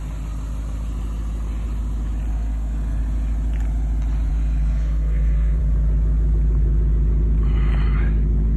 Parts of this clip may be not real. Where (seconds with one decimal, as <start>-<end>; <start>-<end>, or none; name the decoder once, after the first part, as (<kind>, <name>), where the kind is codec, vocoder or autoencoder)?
2.3-3.0 (codec, SNAC); 4.3-5.6